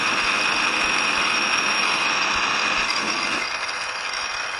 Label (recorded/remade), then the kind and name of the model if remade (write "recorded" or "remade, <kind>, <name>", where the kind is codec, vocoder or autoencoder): recorded